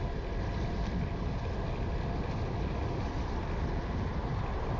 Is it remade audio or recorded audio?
recorded